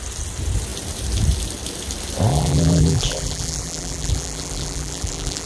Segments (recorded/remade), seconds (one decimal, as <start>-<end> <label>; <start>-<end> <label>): 0.0-2.3 recorded; 2.3-5.5 remade